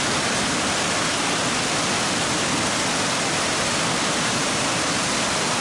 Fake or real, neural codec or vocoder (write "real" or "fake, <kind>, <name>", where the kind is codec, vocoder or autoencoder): real